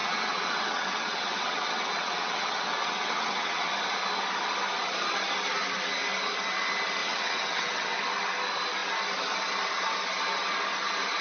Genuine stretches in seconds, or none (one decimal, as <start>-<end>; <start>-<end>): 3.7-7.0; 8.0-11.2

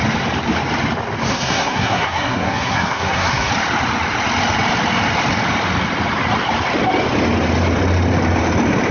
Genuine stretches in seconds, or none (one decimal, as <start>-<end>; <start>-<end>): 0.0-1.3; 3.5-8.9

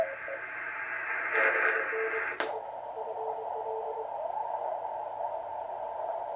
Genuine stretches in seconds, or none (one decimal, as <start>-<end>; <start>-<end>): 0.0-6.4

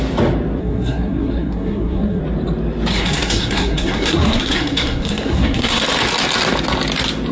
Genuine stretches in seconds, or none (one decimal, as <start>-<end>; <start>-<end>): 0.0-0.6; 2.2-2.9; 5.8-7.3